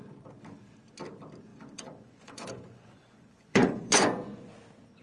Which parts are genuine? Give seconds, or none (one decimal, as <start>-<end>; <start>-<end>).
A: 0.0-1.5; 4.5-5.0